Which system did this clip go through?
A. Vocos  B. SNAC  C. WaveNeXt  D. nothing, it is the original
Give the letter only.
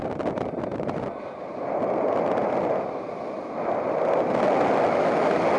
D